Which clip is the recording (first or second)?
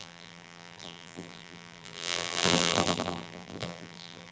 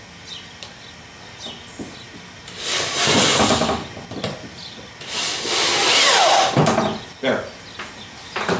second